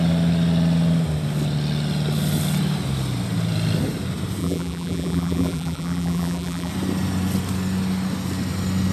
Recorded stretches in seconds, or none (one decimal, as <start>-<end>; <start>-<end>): 0.0-4.4; 6.7-8.9